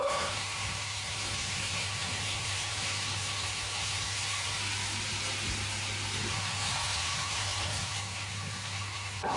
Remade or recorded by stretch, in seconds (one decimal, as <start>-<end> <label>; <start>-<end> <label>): 0.0-4.6 remade; 4.6-6.3 recorded; 6.3-9.4 remade